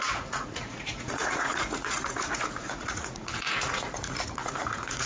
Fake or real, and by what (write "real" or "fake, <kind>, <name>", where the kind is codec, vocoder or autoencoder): fake, vocoder, Vocos